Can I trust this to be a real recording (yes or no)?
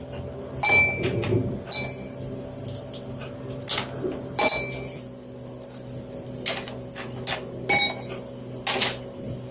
yes